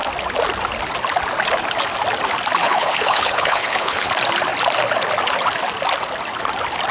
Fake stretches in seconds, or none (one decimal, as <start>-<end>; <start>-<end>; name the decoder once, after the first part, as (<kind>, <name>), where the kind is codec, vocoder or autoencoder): 2.6-4.1 (codec, HILCodec)